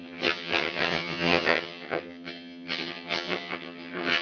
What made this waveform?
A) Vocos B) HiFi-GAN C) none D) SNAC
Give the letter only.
B